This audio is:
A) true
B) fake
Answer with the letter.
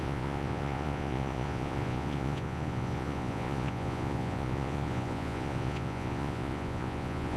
B